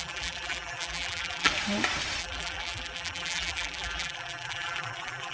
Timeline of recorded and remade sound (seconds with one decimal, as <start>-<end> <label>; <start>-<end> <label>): 0.0-1.5 remade; 1.5-2.2 recorded; 2.2-5.3 remade